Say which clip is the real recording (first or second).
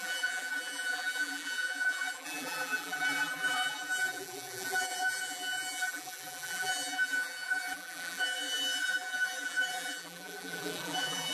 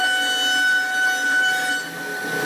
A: second